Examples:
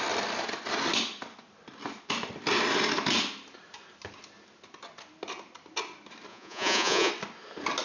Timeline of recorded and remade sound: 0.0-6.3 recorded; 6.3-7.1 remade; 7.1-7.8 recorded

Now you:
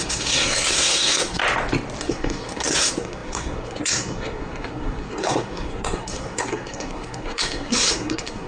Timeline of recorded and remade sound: 0.0-1.4 remade; 1.4-2.0 recorded; 2.0-8.5 remade

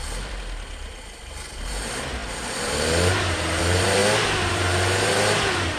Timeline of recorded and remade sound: 0.0-1.7 recorded; 1.7-4.0 remade; 4.0-4.5 recorded; 4.5-5.8 remade

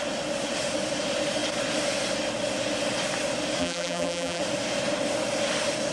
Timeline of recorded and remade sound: 0.0-3.6 recorded; 3.6-4.4 remade; 4.4-5.9 recorded